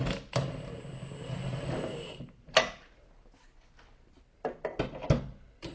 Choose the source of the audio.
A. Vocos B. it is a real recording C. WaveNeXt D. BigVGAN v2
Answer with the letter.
B